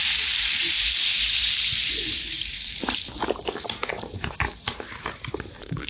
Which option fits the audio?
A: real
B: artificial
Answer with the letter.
B